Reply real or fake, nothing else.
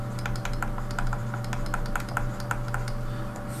real